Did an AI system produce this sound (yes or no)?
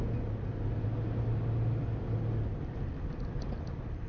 no